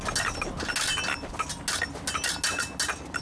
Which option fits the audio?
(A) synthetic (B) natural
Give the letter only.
B